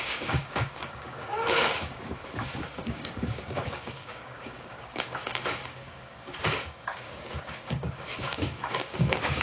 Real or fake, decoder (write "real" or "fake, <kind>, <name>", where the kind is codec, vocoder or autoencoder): fake, codec, DAC